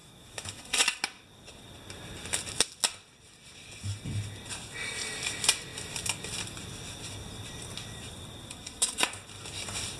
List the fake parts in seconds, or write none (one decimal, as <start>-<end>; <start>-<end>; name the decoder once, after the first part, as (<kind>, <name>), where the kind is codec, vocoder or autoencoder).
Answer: 0.0-0.6 (autoencoder, DAC-VAE)

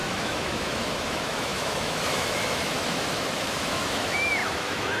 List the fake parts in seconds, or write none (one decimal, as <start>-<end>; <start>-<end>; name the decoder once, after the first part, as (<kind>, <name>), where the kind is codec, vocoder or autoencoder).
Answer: 0.0-5.0 (autoencoder, DAC-VAE)

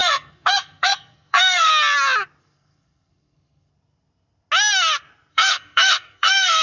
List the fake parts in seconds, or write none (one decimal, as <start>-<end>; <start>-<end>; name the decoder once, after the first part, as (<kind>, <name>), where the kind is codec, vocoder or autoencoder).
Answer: 0.0-1.7 (codec, SNAC); 2.4-3.7; 5.3-6.6

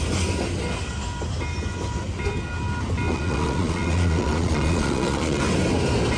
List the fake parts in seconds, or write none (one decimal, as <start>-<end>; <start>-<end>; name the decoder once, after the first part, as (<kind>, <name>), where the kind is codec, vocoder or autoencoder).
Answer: 3.1-5.4 (vocoder, Vocos)